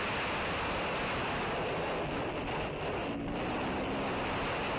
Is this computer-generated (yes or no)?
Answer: no